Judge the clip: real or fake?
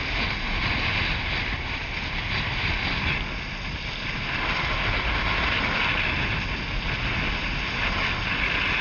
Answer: real